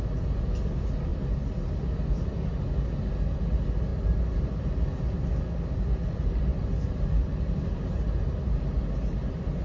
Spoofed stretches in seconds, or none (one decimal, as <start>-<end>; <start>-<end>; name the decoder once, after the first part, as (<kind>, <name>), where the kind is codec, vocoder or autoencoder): 1.1-1.8 (vocoder, BigVGAN v2); 6.5-7.6